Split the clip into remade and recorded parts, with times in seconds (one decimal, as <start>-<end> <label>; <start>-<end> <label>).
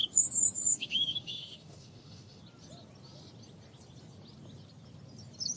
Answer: 0.0-0.7 recorded; 0.7-2.4 remade; 2.4-5.6 recorded